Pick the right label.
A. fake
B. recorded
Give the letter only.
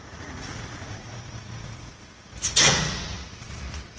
A